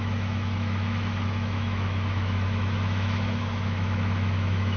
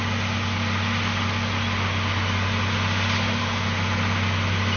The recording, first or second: second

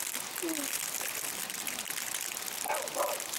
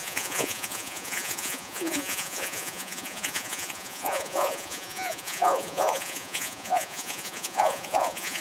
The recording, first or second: first